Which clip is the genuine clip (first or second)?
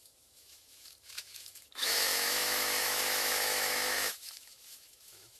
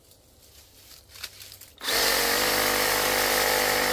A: second